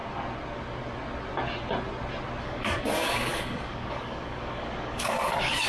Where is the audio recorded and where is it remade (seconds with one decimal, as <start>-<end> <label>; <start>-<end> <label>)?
0.0-2.4 recorded; 2.4-5.7 remade